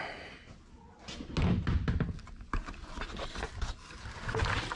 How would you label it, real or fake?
real